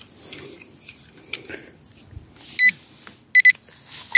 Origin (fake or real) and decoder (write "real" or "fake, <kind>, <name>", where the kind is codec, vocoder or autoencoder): real